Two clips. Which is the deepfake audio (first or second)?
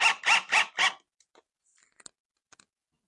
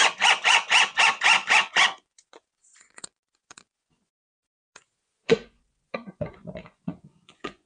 second